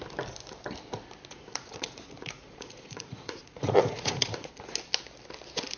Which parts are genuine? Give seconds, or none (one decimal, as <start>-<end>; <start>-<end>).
0.0-1.3; 4.5-5.8